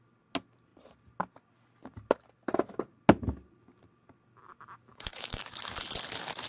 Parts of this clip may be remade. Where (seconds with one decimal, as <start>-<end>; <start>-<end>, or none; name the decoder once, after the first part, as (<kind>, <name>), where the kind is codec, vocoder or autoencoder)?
4.9-5.4 (autoencoder, DAC-VAE)